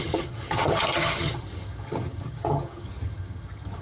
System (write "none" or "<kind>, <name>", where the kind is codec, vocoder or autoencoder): vocoder, HiFi-GAN